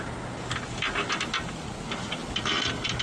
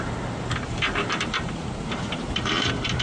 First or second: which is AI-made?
second